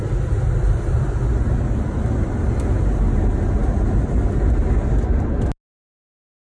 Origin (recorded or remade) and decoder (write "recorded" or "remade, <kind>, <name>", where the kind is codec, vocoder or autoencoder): recorded